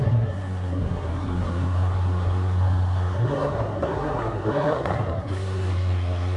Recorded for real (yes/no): no